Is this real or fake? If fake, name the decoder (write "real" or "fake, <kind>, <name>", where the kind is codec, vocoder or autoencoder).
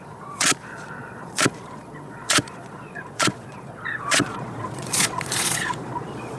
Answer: fake, vocoder, Vocos